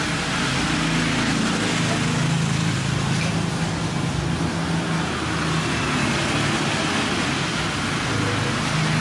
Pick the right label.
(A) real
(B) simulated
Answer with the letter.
A